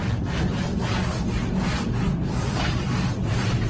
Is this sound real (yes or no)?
yes